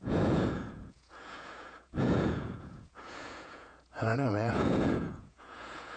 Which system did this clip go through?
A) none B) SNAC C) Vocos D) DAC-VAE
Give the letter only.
C